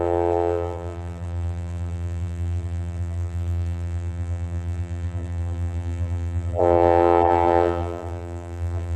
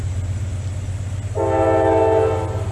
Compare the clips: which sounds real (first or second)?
second